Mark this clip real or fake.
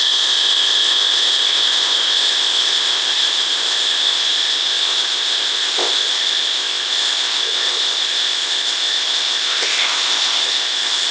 fake